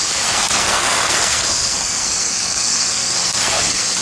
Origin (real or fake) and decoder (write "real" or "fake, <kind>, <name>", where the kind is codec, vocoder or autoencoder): fake, codec, SNAC